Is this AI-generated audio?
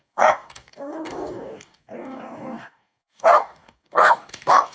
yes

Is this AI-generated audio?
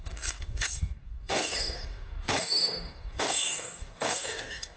yes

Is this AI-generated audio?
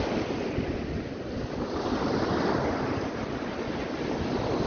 no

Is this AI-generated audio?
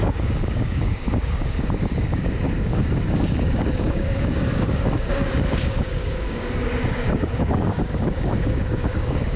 yes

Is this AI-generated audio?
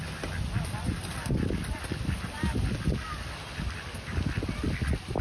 no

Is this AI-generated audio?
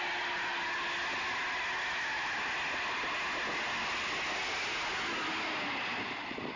no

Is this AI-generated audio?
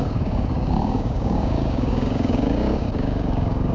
yes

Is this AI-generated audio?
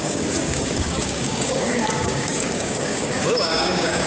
yes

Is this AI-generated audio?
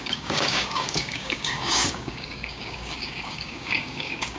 yes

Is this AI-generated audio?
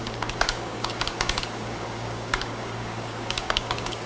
yes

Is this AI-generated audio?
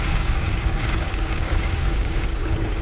yes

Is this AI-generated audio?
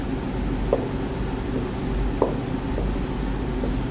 no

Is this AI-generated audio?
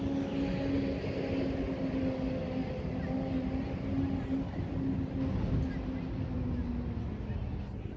no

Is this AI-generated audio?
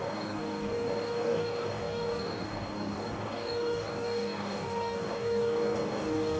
yes